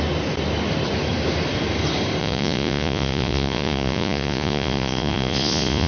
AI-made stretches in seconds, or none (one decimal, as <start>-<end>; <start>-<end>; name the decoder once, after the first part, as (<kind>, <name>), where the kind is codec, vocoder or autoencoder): 2.2-5.9 (vocoder, Vocos)